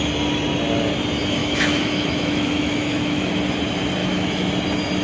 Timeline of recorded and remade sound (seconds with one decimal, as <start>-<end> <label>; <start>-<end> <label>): 0.0-1.4 recorded; 1.4-3.3 remade; 3.3-4.0 recorded; 4.0-4.5 remade; 4.5-5.0 recorded